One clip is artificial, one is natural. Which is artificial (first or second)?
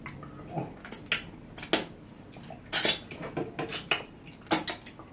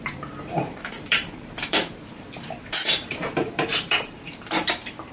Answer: second